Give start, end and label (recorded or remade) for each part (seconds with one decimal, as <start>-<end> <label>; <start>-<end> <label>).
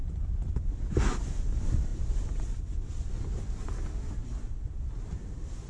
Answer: 0.0-0.6 remade; 0.6-1.9 recorded; 1.9-3.1 remade; 3.1-5.7 recorded